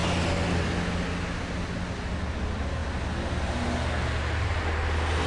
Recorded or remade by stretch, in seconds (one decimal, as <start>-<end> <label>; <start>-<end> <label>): 0.0-5.3 recorded